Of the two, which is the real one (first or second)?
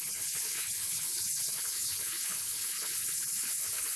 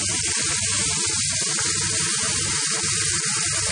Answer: second